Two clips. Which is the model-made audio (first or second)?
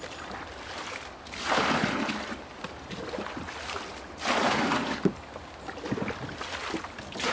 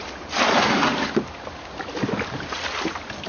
second